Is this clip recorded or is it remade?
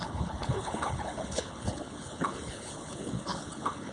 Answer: remade